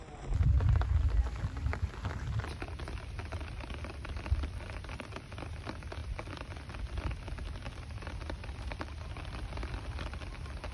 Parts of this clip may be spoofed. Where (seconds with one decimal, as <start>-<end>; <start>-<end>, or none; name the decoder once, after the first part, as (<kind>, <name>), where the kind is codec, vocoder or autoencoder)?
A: none